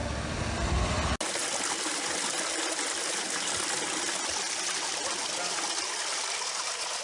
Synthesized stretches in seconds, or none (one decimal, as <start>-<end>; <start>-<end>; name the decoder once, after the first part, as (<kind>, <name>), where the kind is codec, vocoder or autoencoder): none